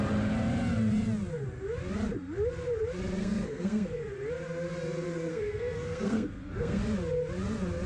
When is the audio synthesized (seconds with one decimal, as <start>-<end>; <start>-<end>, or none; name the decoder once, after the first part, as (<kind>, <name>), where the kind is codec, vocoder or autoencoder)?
3.2-4.0 (codec, SNAC); 5.3-6.8